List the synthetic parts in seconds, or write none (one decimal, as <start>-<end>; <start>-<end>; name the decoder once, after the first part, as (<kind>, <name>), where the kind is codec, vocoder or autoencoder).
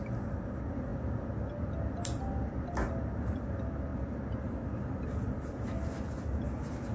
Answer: none